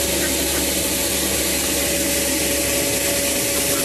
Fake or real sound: real